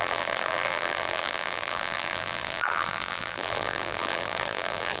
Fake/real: fake